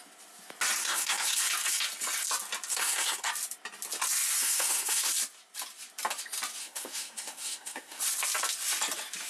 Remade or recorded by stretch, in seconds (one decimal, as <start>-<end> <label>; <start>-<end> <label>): 0.0-0.8 recorded; 0.8-1.4 remade; 1.4-2.7 recorded; 2.7-3.3 remade; 3.3-4.4 recorded; 4.4-5.1 remade; 5.1-6.6 recorded; 6.6-8.0 remade; 8.0-9.3 recorded